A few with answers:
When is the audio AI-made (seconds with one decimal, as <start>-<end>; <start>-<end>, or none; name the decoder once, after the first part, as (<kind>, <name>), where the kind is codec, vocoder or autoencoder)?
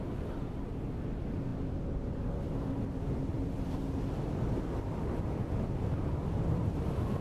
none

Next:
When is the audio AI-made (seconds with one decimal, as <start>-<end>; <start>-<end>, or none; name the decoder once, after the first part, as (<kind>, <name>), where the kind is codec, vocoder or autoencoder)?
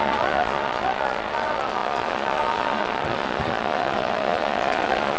0.0-5.2 (vocoder, Vocos)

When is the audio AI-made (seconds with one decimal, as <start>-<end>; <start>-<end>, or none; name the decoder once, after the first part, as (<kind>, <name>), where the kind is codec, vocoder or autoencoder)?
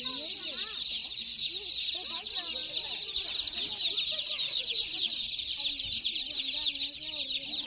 4.5-5.4 (vocoder, Vocos)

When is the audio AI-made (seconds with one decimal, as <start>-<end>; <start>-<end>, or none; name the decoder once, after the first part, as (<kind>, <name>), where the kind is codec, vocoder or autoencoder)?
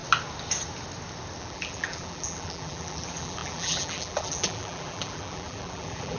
1.4-6.2 (vocoder, BigVGAN v2)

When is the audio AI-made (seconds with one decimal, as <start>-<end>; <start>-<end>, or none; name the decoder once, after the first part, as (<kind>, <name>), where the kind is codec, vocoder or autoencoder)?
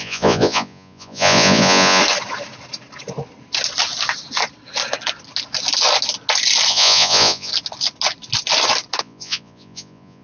0.0-2.0 (vocoder, Vocos); 6.7-7.5; 9.0-10.2